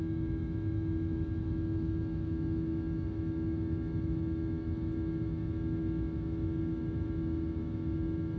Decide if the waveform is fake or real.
fake